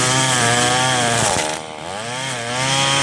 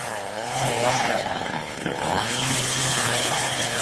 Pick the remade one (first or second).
second